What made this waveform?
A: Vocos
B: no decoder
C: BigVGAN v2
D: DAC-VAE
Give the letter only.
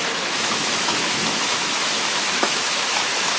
D